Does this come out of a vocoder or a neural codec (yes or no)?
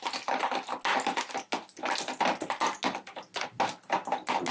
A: no